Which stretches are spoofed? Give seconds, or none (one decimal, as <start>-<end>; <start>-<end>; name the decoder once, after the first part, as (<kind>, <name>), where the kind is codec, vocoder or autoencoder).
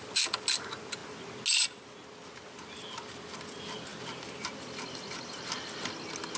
none